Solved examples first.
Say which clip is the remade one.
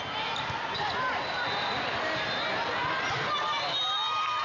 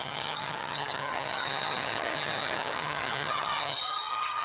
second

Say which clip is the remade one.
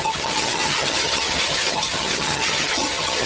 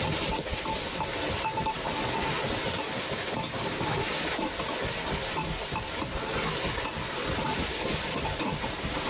first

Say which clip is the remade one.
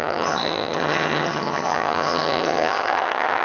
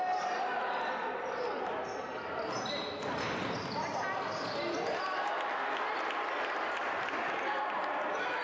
first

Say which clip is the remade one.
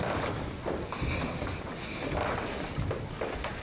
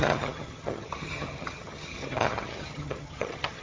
second